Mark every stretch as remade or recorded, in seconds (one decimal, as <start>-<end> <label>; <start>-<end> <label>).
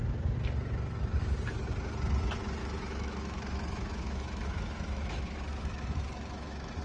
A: 0.0-2.6 recorded; 2.6-6.8 remade